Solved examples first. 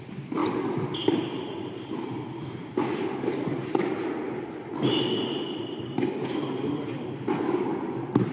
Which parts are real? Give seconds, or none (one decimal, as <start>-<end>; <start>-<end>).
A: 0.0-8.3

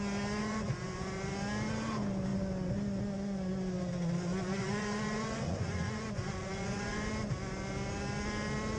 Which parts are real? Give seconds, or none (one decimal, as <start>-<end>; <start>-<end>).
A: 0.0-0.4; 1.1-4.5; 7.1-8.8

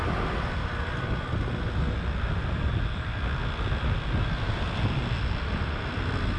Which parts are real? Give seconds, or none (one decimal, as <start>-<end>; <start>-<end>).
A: 0.0-6.4

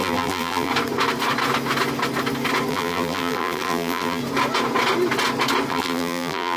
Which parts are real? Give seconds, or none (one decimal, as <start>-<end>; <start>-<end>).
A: 0.7-2.7; 4.2-5.7

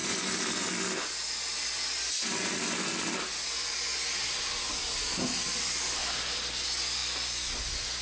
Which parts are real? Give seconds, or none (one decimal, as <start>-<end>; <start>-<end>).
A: 0.0-8.0